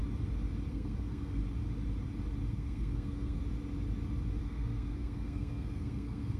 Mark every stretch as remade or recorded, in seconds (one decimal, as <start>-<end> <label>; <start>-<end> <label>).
0.0-0.7 recorded; 0.7-1.4 remade; 1.4-2.5 recorded; 2.5-3.4 remade; 3.4-4.4 recorded; 4.4-6.4 remade